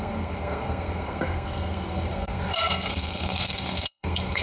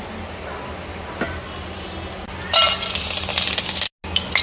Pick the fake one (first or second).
first